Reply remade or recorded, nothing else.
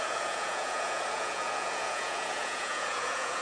remade